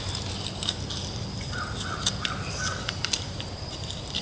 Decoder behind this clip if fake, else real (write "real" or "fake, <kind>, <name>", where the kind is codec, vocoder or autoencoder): real